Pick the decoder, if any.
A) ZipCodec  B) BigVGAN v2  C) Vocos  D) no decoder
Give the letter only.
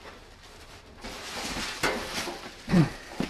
B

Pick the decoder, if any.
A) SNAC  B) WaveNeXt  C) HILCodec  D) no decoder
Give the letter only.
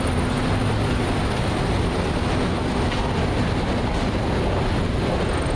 D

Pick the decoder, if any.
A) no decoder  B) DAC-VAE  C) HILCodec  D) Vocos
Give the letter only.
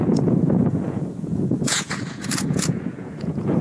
D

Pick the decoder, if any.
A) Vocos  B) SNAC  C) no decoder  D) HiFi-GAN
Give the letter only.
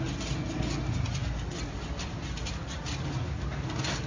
C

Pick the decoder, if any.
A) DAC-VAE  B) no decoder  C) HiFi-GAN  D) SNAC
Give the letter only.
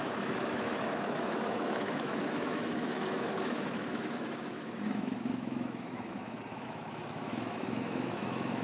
A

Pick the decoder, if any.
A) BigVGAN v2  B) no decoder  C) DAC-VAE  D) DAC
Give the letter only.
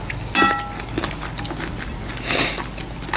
B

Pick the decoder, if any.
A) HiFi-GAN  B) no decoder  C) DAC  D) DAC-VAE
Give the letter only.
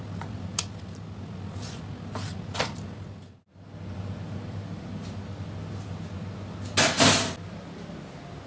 B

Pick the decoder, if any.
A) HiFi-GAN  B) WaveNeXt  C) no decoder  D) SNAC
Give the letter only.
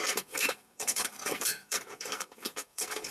D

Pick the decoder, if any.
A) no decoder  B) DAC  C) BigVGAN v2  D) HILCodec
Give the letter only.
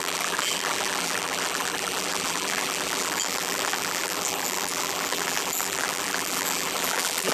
C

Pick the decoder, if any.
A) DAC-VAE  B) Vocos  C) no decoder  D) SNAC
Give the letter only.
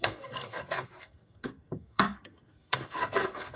D